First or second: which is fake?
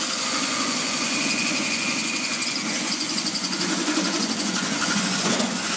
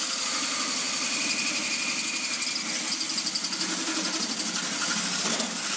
first